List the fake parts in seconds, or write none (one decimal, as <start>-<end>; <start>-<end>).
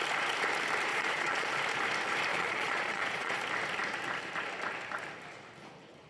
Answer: 0.9-1.5; 2.3-3.4